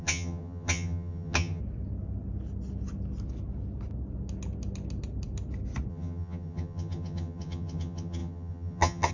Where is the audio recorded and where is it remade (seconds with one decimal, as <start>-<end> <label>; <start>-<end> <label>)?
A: 0.0-1.6 remade; 1.6-5.9 recorded; 5.9-9.1 remade